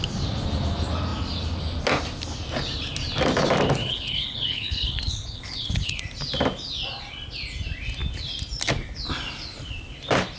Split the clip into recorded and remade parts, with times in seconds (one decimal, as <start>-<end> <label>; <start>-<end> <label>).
0.0-3.8 recorded; 3.8-6.0 remade; 6.0-10.4 recorded